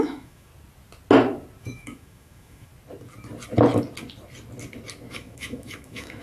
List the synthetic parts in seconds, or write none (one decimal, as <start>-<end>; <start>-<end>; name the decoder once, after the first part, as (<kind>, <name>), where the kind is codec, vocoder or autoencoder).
0.0-0.5 (autoencoder, DAC-VAE); 1.6-2.7; 5.1-6.2